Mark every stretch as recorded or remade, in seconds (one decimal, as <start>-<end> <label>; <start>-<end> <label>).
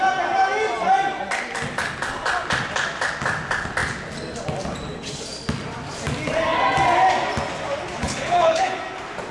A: 0.0-8.0 recorded; 8.0-8.8 remade; 8.8-9.3 recorded